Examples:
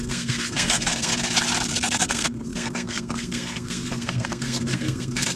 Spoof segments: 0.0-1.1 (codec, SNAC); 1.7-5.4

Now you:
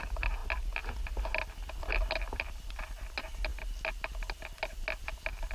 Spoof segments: none

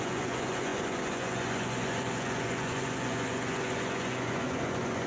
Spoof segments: 0.0-5.1 (vocoder, Vocos)

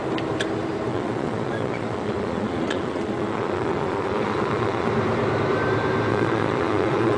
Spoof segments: 0.9-4.9 (vocoder, Vocos); 6.1-7.2

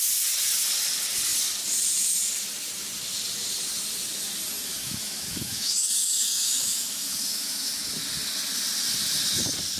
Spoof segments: 4.8-7.9 (autoencoder, DAC-VAE)

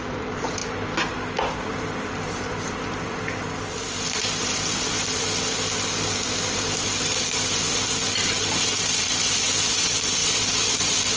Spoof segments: 0.0-0.6 (vocoder, BigVGAN v2); 1.7-4.2; 9.2-11.2

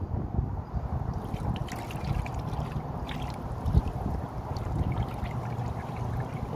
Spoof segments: none